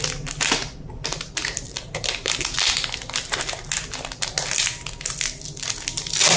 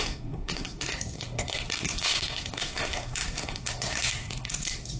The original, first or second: first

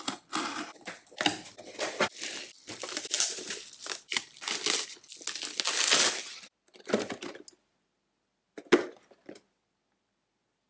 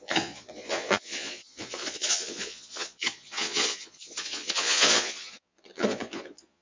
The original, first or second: first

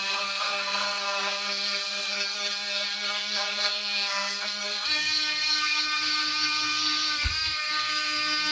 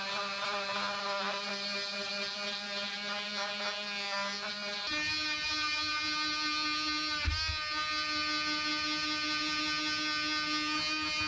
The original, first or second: second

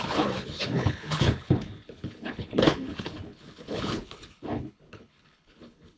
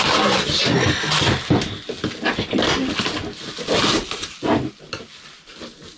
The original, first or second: second